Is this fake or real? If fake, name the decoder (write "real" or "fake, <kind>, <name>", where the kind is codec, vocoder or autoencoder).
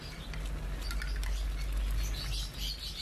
real